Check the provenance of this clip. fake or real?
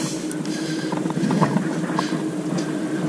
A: fake